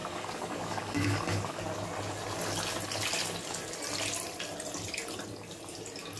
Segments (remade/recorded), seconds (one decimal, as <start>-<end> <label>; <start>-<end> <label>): 0.0-1.6 remade; 1.6-6.2 recorded